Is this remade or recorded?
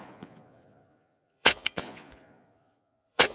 remade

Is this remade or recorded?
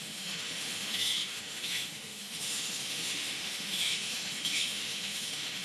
remade